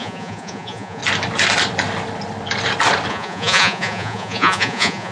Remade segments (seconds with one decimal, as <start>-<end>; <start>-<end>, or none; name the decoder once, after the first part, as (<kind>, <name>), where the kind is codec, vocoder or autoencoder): 0.0-1.0 (vocoder, Vocos); 3.1-5.1

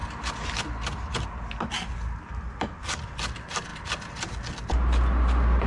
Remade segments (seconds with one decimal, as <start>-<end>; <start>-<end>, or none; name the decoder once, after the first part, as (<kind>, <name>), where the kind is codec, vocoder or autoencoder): none

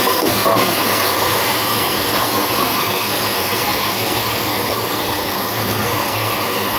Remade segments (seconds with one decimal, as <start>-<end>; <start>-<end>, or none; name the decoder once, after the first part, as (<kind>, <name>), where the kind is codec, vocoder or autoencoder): 0.0-6.8 (codec, SNAC)

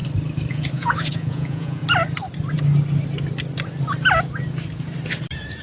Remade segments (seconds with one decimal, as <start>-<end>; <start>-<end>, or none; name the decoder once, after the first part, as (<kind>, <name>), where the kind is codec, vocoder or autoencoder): 0.5-1.8 (vocoder, Vocos)

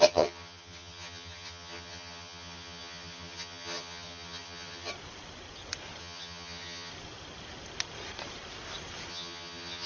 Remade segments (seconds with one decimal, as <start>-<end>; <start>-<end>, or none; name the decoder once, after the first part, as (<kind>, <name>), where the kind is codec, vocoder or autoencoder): 0.0-4.9 (vocoder, HiFi-GAN); 6.0-6.9; 9.1-9.9

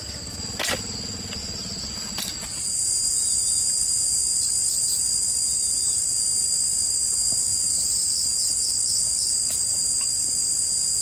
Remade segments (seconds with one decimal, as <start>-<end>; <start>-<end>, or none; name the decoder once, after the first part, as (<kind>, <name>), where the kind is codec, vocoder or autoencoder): 1.4-4.1 (vocoder, BigVGAN v2); 5.4-6.0; 7.5-8.3